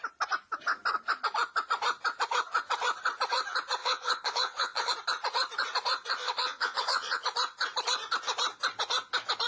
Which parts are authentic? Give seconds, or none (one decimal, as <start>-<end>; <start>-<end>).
0.0-3.8; 4.9-6.2; 7.2-9.5